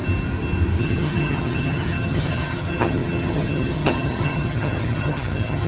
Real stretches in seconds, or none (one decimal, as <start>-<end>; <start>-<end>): 0.0-0.8